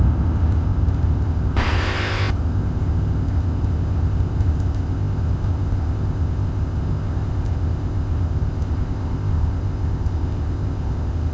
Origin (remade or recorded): remade